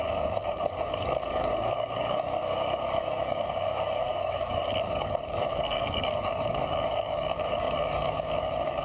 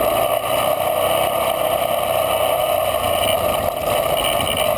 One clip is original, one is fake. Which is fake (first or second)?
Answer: first